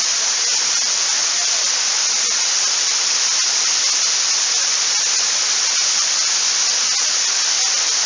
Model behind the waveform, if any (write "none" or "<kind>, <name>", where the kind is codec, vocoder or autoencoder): none